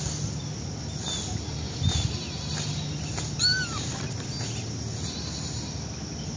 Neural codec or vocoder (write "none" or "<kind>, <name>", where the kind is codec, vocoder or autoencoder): none